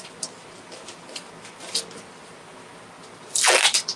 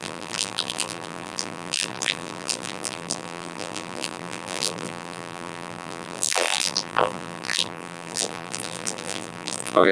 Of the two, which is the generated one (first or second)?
second